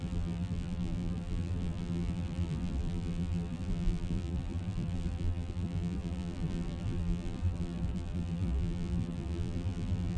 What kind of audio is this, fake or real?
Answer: fake